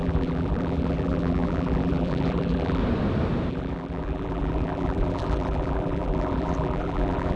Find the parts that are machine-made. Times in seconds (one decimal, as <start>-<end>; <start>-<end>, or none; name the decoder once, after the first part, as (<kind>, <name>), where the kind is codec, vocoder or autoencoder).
0.0-2.8 (vocoder, BigVGAN v2); 3.5-7.4